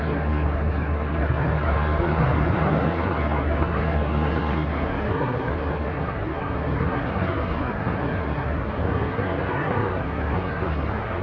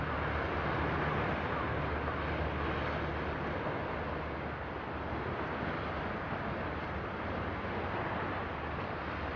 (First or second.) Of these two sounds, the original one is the second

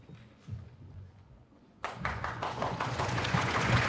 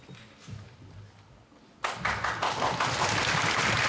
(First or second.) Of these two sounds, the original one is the second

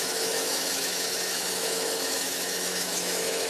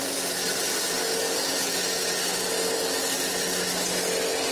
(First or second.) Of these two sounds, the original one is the second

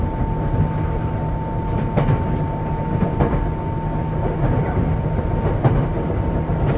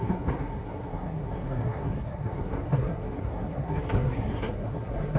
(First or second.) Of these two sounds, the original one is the first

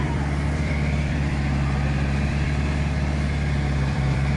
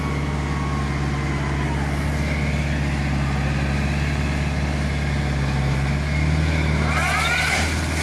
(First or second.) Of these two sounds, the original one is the second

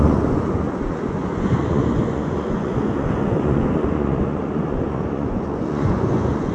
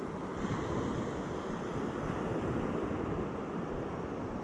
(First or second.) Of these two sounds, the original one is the second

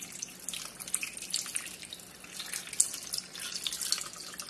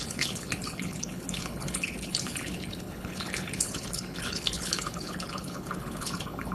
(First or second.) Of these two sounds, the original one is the first